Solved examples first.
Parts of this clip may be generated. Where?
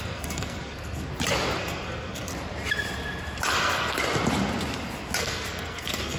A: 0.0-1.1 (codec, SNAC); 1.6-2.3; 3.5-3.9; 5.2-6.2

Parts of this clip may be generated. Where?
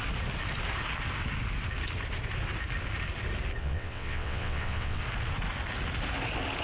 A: 3.6-5.0 (vocoder, WaveNeXt)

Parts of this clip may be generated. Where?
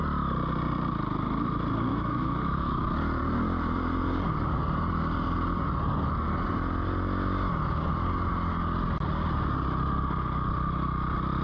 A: 1.9-2.9 (autoencoder, DAC-VAE)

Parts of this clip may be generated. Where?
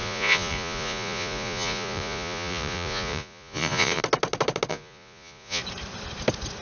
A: 0.0-4.0 (vocoder, Vocos); 4.7-5.6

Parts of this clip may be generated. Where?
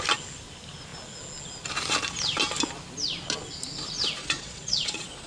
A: 4.2-5.3 (vocoder, Vocos)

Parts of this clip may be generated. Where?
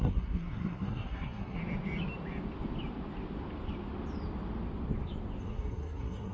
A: 0.0-1.6 (codec, SNAC); 5.4-6.3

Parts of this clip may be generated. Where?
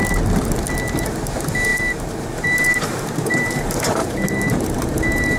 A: 1.7-3.6 (vocoder, BigVGAN v2); 4.0-5.4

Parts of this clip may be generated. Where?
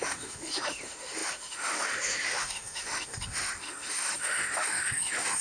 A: 0.0-5.4 (autoencoder, DAC-VAE)